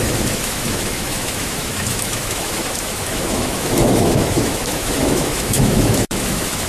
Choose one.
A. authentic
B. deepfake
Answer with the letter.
B